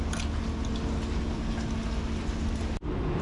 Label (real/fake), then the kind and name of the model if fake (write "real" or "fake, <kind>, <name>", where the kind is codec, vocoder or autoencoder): real